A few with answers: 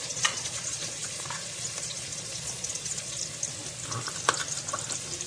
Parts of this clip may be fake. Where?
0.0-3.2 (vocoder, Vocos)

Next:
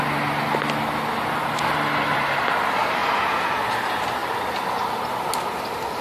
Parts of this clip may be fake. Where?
3.0-3.6 (vocoder, Vocos)

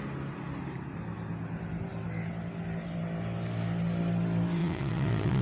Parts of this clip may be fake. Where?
4.6-5.4 (vocoder, WaveNeXt)

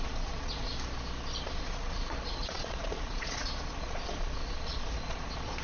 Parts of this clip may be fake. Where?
0.0-0.7 (vocoder, Vocos); 1.4-5.6

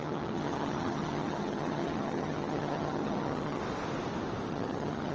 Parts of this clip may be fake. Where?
0.0-3.6 (vocoder, HiFi-GAN); 4.5-5.1

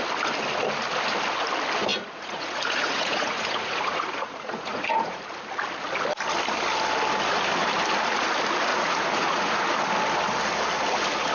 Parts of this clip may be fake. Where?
1.9-5.2 (vocoder, Vocos); 8.7-9.6

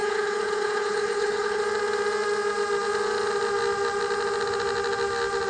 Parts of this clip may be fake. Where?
0.0-1.6 (codec, HILCodec)